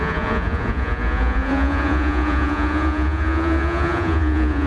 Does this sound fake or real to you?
fake